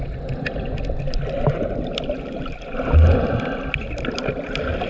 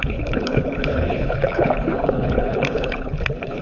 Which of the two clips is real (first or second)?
first